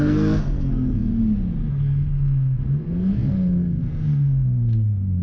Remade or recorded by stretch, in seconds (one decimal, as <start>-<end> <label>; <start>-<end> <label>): 0.0-1.1 remade; 1.1-1.7 recorded; 1.7-5.2 remade